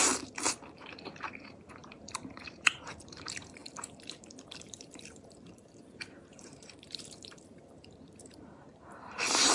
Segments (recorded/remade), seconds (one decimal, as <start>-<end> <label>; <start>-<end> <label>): 0.0-9.5 remade